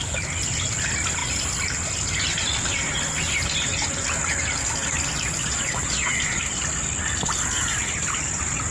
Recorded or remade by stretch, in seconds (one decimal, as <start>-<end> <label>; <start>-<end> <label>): 0.0-5.4 recorded; 5.4-6.4 remade; 6.4-8.7 recorded